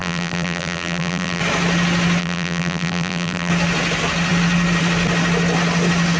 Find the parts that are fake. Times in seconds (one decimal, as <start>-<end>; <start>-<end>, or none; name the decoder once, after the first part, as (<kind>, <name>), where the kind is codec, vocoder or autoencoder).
0.0-1.4 (vocoder, BigVGAN v2); 2.2-3.5